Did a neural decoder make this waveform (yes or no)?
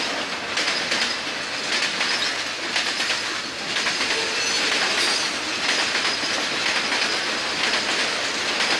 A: no